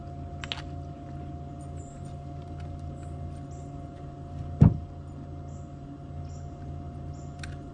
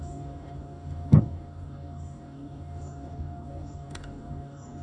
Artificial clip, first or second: second